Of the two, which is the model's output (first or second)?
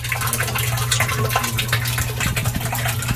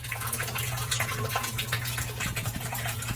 second